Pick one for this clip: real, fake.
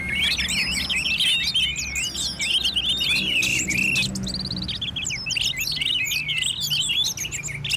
real